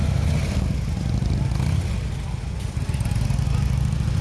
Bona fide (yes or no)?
yes